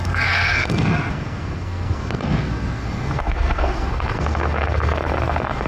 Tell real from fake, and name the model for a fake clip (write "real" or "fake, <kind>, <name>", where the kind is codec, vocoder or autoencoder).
fake, codec, SNAC